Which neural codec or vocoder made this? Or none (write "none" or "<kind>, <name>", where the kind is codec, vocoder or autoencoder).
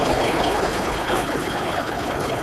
codec, HILCodec